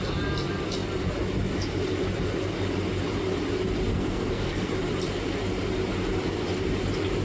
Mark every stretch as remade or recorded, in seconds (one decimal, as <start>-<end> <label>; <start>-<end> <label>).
0.0-3.9 recorded; 3.9-4.7 remade; 4.7-7.2 recorded